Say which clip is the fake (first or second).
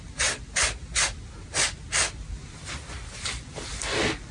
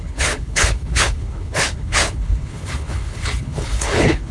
second